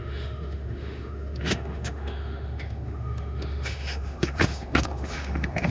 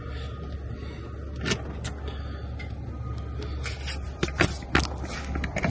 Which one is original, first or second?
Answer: second